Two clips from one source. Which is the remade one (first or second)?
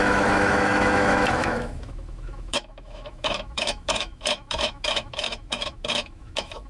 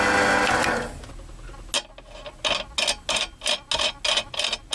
first